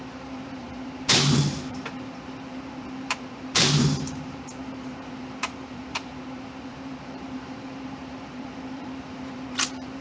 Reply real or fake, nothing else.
fake